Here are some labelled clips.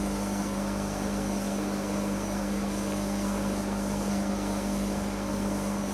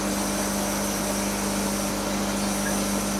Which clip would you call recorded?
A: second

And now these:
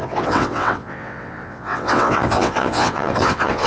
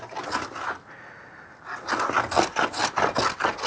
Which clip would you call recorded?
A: second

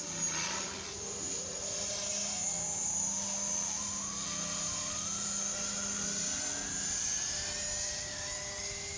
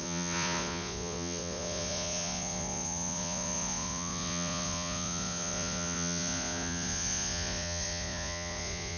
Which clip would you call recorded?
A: first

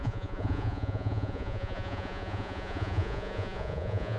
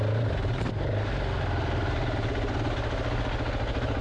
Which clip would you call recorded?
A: second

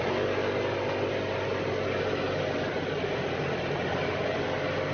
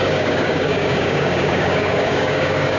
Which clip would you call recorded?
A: first